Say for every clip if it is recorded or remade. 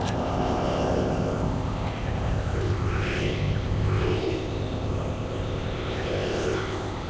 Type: remade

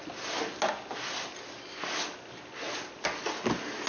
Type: recorded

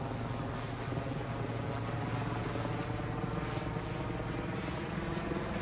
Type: recorded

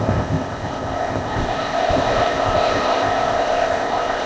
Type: remade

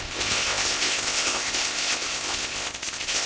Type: remade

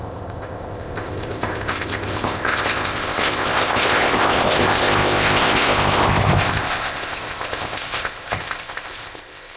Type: remade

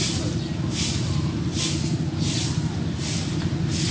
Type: recorded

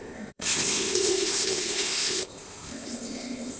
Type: remade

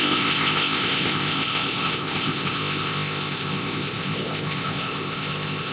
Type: remade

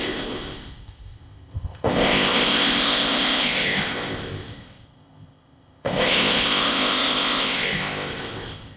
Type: remade